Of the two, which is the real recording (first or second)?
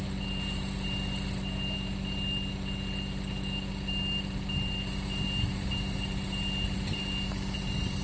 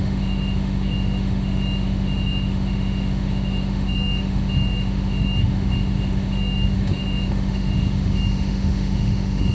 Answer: first